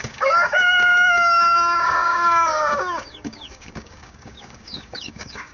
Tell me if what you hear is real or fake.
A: fake